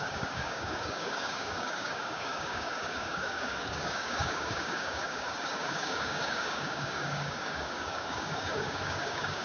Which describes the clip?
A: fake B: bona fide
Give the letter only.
A